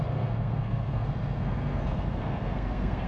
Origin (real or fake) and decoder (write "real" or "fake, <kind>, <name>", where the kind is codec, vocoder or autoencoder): fake, codec, SNAC